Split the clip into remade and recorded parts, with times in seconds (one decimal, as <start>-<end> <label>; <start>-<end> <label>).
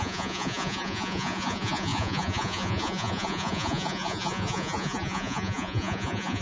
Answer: 0.0-6.4 remade